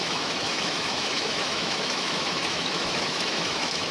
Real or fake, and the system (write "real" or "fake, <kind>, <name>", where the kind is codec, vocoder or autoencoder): fake, autoencoder, DAC-VAE